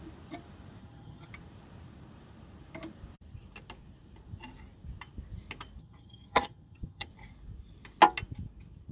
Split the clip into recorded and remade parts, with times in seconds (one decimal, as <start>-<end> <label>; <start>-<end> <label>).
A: 0.0-0.8 recorded; 0.8-1.3 remade; 1.3-5.8 recorded; 5.8-7.1 remade; 7.1-8.9 recorded